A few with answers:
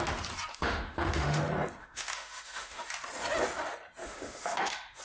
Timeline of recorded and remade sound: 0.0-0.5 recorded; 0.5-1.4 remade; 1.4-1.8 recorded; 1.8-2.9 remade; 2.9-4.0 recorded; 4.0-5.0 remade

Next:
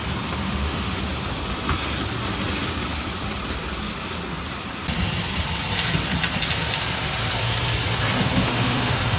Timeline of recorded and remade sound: 0.0-0.4 recorded; 0.4-1.0 remade; 1.0-8.2 recorded; 8.2-9.2 remade

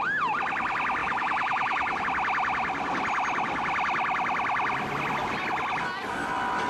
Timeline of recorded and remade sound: 0.0-1.0 recorded; 1.0-2.0 remade; 2.0-6.7 recorded

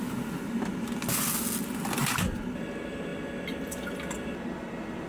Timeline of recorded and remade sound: 0.0-5.1 recorded

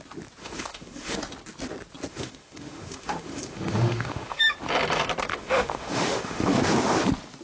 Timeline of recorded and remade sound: 0.0-0.4 recorded; 0.4-1.2 remade; 1.2-2.1 recorded; 2.1-4.5 remade; 4.5-5.3 recorded; 5.3-6.6 remade; 6.6-7.4 recorded

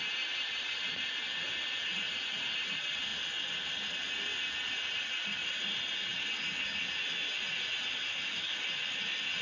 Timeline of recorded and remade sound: 0.0-8.0 recorded; 8.0-8.6 remade; 8.6-9.4 recorded